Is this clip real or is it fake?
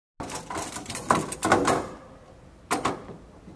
real